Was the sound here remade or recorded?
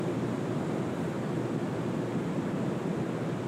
recorded